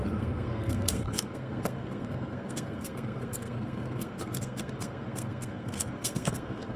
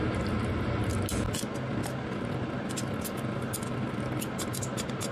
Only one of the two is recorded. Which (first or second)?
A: second